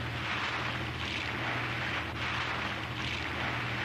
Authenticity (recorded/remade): recorded